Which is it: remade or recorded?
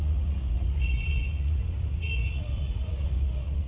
remade